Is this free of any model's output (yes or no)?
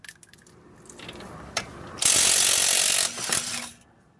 yes